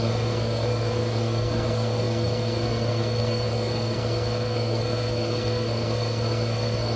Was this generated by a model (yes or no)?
yes